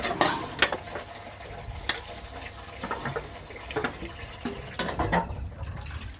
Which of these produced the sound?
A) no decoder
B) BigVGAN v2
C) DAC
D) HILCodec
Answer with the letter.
A